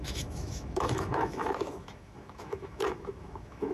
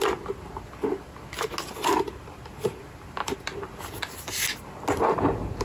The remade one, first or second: first